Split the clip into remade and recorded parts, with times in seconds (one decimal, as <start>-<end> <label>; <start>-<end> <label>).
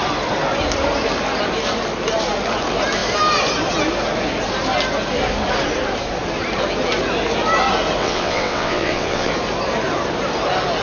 0.0-8.0 recorded; 8.0-9.3 remade; 9.3-10.8 recorded